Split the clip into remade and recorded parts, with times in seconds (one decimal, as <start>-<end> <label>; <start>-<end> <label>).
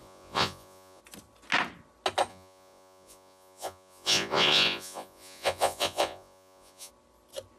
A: 0.0-1.0 remade; 1.0-2.3 recorded; 2.3-6.9 remade; 6.9-7.6 recorded